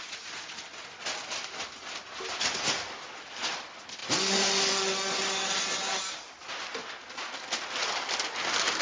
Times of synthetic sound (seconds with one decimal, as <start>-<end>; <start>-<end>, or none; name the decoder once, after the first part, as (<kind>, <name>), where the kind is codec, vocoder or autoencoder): none